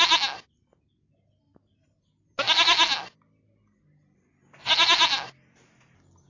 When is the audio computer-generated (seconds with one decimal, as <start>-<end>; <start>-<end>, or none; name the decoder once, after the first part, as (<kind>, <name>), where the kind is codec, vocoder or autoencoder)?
none